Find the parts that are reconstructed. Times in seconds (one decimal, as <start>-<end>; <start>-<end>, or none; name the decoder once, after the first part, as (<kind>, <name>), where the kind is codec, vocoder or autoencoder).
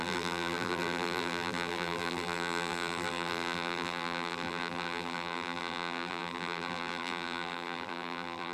0.0-8.5 (vocoder, BigVGAN v2)